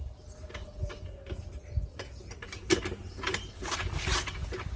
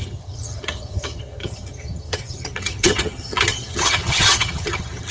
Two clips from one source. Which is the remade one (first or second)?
second